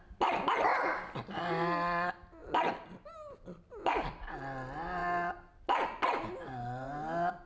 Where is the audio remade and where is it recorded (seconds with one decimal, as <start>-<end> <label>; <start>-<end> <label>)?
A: 0.0-7.5 recorded